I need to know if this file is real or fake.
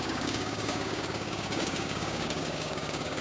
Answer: fake